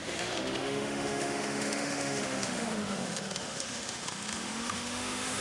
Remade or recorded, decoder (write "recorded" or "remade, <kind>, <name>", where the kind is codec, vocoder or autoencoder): remade, autoencoder, DAC-VAE